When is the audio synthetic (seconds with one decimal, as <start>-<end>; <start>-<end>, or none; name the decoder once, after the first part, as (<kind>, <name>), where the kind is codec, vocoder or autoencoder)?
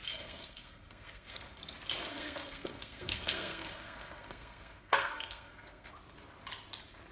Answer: 0.0-1.6 (codec, SNAC); 2.1-5.9